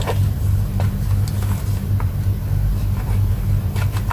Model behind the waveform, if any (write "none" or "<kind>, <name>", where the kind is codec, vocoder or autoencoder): none